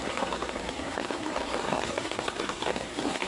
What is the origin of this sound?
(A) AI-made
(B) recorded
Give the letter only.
A